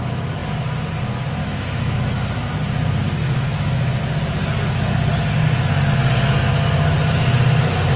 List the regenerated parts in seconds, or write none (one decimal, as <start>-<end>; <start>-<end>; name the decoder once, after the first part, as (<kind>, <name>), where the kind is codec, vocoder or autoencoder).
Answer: 1.4-2.5 (autoencoder, DAC-VAE); 3.2-4.0